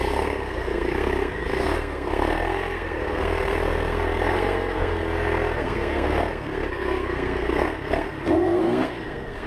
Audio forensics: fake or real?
fake